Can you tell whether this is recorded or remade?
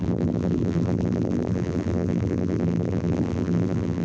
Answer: remade